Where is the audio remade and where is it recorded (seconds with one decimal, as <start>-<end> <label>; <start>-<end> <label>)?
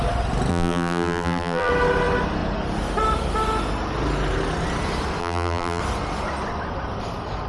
0.0-0.5 recorded; 0.5-1.7 remade; 1.7-5.2 recorded; 5.2-5.8 remade; 5.8-7.5 recorded